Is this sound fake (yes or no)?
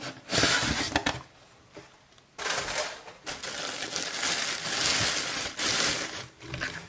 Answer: no